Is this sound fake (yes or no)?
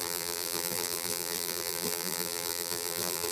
yes